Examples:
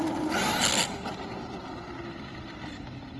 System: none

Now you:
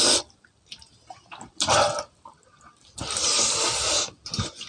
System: none